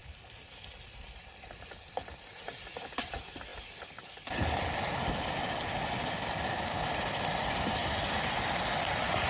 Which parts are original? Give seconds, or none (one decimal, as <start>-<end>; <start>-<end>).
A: 0.0-9.3